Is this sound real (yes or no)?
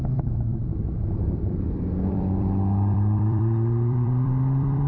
no